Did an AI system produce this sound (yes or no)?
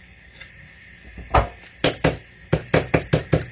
no